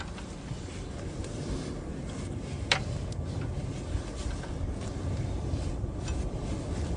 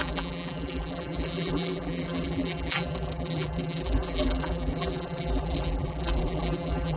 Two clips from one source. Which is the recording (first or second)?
first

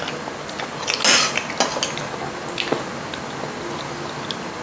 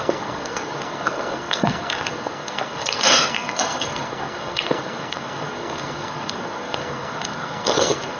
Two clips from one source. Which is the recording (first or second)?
first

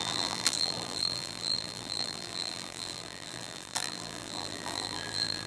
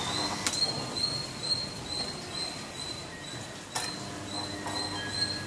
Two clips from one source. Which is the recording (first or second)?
second